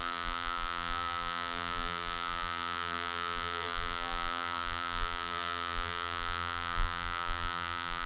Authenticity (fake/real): fake